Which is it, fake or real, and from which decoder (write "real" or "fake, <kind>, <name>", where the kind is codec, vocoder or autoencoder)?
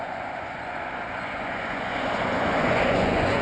fake, vocoder, Vocos